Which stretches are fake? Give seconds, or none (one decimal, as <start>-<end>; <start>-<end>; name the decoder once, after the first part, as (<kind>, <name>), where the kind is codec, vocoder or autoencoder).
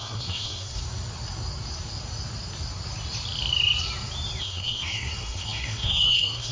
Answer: 0.0-0.8 (codec, SNAC); 4.4-6.5